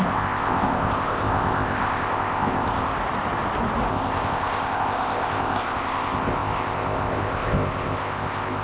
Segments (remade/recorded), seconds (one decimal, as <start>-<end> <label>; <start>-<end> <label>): 0.0-2.9 remade; 2.9-3.9 recorded; 3.9-8.6 remade